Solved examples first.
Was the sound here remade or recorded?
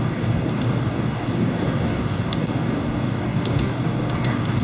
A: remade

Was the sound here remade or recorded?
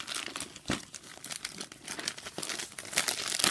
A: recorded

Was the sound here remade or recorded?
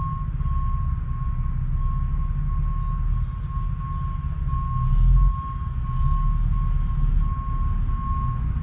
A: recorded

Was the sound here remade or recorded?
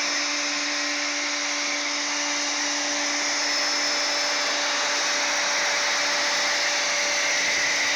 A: recorded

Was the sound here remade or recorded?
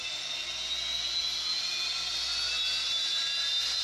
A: recorded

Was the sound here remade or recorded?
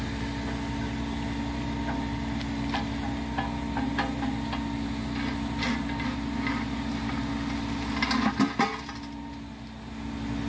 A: recorded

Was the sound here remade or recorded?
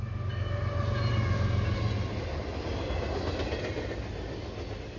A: recorded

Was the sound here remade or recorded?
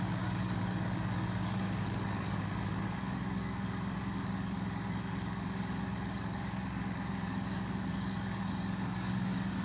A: remade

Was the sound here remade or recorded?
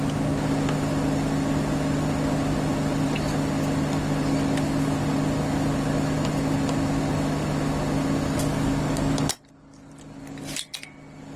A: recorded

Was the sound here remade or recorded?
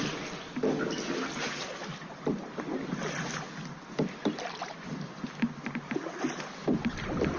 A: recorded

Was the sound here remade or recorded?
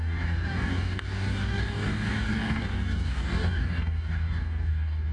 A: remade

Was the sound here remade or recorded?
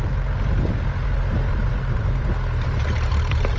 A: recorded